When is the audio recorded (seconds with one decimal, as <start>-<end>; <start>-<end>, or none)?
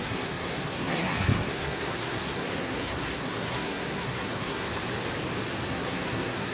4.7-5.7